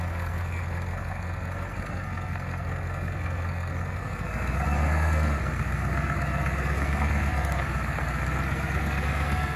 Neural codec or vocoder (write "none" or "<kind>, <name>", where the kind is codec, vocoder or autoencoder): codec, SNAC